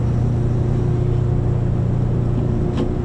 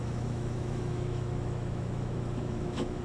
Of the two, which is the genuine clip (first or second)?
first